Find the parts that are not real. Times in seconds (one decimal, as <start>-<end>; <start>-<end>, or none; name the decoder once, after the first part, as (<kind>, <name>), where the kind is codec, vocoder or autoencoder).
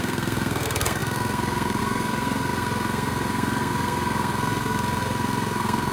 0.0-5.9 (codec, SNAC)